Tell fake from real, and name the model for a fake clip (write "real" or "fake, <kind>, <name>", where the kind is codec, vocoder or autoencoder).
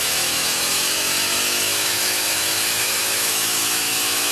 fake, autoencoder, DAC-VAE